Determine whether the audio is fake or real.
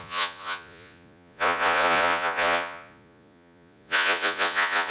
fake